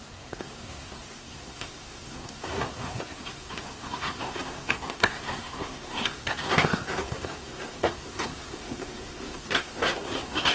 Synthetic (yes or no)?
yes